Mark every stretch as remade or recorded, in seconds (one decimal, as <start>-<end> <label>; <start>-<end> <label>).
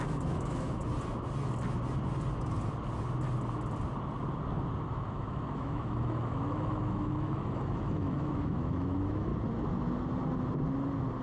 0.0-0.8 remade; 0.8-4.9 recorded; 4.9-9.3 remade; 9.3-11.2 recorded